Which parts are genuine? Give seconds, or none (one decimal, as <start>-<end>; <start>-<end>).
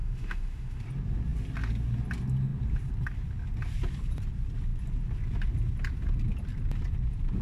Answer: 0.8-7.4